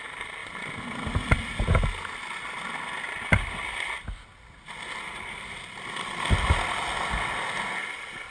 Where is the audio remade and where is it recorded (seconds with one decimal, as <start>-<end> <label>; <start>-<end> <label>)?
0.0-8.3 recorded